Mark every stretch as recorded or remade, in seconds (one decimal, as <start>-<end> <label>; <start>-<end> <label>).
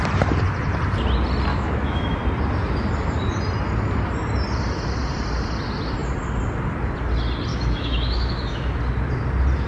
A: 0.0-1.5 recorded; 1.5-2.2 remade; 2.2-7.5 recorded; 7.5-8.8 remade; 8.8-9.7 recorded